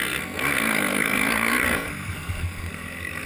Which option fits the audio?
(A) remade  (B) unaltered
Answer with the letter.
A